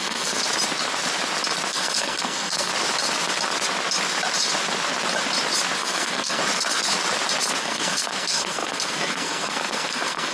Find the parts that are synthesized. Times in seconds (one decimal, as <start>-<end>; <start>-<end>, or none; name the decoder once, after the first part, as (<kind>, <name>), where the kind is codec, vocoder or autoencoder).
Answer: 0.0-0.4 (codec, SNAC); 1.7-2.7; 5.8-6.4; 7.6-10.3